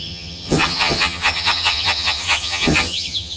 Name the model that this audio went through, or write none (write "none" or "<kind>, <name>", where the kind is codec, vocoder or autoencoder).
vocoder, HiFi-GAN